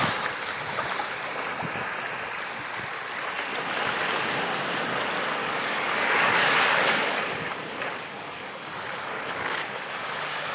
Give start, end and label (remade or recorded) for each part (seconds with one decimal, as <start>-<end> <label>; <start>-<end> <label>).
0.0-5.4 recorded; 5.4-10.5 remade